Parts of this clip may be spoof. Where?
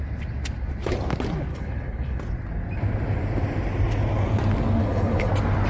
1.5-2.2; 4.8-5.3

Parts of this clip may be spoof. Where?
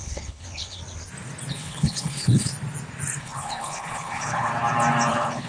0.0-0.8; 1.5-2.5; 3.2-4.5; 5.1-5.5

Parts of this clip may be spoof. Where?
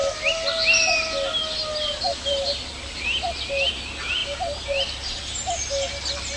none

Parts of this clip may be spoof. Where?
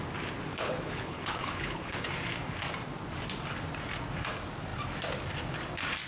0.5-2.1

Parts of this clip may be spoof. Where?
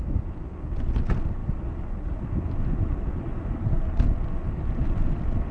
none